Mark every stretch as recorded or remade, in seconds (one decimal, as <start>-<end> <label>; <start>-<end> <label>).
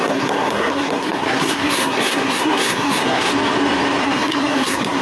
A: 0.0-3.3 remade; 3.3-4.0 recorded; 4.0-5.0 remade